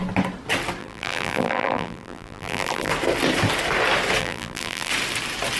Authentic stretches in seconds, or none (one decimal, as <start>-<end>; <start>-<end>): 0.0-0.8; 2.9-4.2; 4.9-5.6